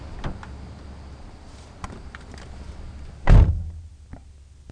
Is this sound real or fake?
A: real